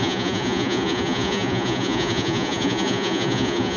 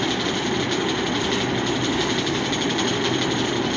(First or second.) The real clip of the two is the second